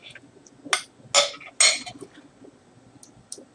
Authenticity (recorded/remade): recorded